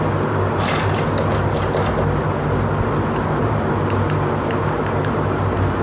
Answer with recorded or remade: recorded